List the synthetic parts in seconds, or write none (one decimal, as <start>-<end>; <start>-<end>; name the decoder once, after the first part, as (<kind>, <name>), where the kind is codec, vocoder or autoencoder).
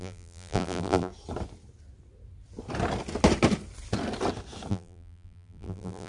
0.0-1.1 (vocoder, BigVGAN v2); 4.7-6.1